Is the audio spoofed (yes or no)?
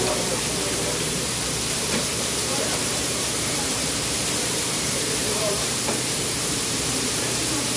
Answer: yes